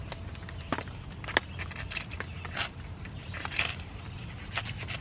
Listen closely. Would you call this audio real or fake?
real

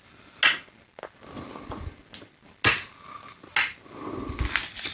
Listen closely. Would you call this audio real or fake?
real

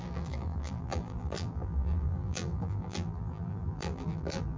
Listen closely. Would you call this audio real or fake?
fake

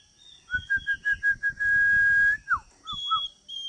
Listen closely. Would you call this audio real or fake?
real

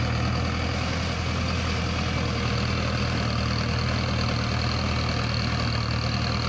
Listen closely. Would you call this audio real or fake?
real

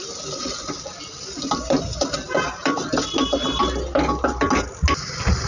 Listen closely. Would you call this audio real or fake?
real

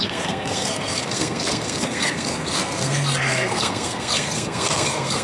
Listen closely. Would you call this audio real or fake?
fake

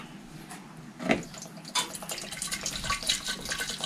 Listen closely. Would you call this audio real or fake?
real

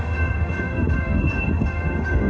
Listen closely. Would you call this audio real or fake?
fake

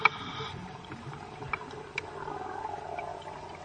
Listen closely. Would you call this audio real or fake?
real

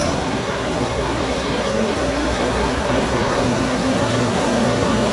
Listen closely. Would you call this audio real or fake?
fake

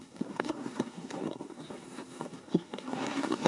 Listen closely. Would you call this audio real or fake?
fake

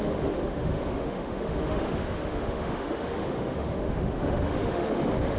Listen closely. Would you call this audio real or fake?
fake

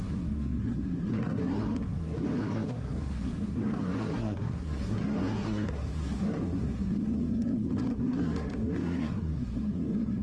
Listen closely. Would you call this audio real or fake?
fake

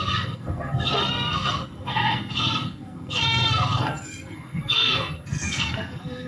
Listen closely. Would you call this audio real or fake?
fake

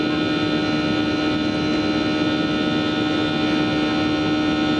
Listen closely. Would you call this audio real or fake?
real